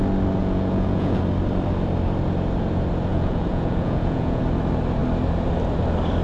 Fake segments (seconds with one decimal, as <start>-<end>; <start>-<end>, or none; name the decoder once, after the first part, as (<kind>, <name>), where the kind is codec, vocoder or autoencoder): 0.4-1.2 (vocoder, Vocos); 3.1-4.4